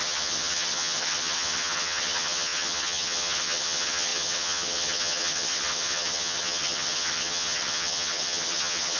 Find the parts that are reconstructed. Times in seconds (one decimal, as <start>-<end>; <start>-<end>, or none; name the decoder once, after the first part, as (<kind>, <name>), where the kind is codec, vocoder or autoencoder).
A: 0.0-9.0 (vocoder, HiFi-GAN)